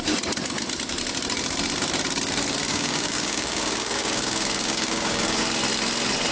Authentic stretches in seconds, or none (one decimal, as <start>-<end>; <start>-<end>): 0.0-2.7; 5.4-6.3